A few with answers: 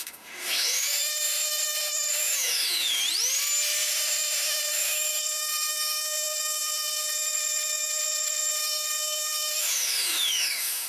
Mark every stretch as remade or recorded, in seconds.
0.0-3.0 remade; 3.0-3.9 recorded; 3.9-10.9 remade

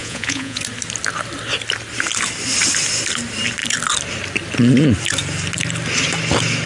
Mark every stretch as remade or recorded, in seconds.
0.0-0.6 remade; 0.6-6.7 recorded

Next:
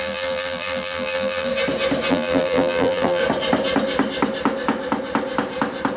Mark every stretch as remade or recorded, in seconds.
0.0-1.5 remade; 1.5-2.1 recorded; 2.1-3.2 remade; 3.2-6.0 recorded

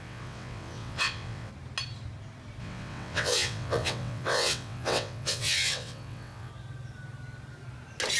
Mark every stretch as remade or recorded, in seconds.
0.0-1.5 remade; 1.5-2.6 recorded; 2.6-6.5 remade; 6.5-8.2 recorded

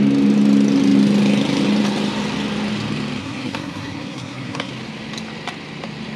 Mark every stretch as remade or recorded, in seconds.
0.0-3.2 recorded; 3.2-4.7 remade; 4.7-6.2 recorded

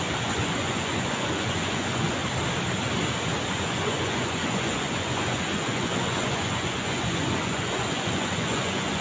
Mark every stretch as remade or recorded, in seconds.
0.0-2.2 remade; 2.2-3.5 recorded; 3.5-9.0 remade

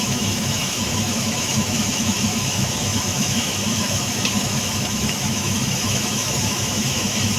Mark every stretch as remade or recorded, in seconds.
0.0-7.4 remade